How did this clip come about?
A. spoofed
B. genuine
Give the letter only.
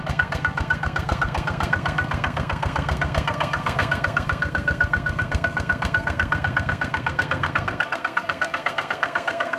A